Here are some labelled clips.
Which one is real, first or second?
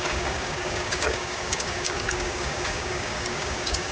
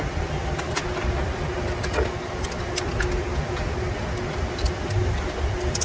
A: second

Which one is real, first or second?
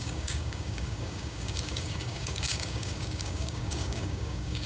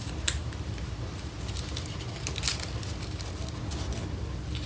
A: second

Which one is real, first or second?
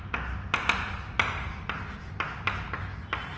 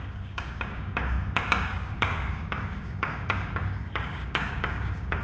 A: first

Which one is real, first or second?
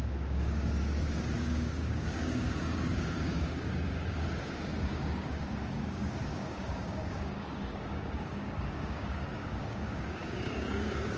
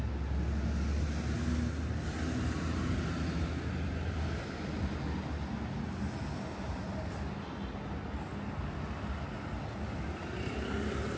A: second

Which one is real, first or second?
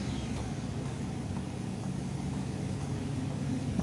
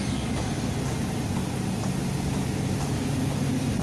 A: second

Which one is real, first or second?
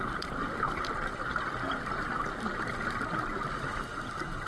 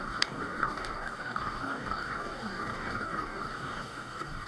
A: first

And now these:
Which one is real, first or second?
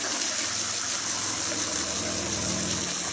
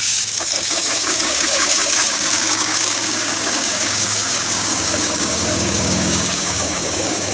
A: first